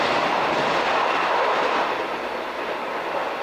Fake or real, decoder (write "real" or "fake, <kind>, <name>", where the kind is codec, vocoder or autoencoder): real